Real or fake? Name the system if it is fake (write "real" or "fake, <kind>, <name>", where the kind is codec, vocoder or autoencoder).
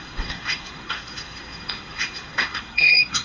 fake, codec, SNAC